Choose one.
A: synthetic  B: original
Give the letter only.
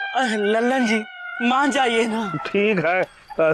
A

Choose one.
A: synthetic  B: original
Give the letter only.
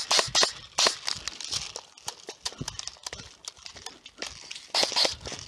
B